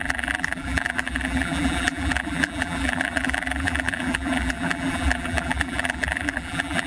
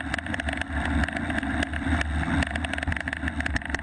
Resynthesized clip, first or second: first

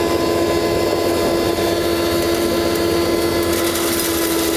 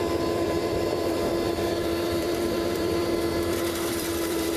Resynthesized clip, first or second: second